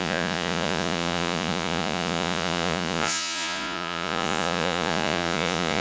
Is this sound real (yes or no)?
no